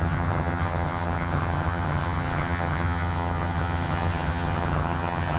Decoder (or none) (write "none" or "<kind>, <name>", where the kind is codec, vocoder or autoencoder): vocoder, HiFi-GAN